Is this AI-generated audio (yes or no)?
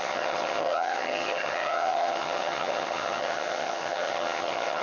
yes